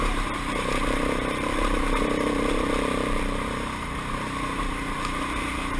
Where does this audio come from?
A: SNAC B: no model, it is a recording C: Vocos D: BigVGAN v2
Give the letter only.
D